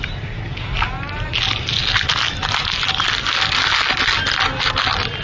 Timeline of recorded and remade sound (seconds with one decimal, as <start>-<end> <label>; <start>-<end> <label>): 0.0-5.2 recorded